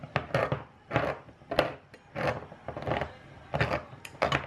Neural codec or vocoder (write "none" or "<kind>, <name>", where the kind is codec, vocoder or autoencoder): none